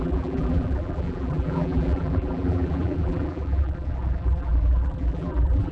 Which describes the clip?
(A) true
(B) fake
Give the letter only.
B